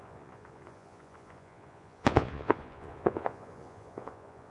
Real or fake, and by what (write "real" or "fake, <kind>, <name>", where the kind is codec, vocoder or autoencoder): fake, vocoder, Vocos